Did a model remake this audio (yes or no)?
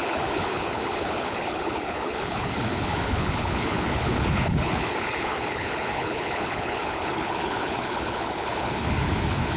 yes